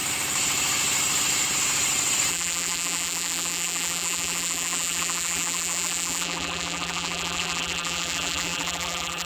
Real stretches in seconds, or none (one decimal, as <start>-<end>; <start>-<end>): 0.0-2.3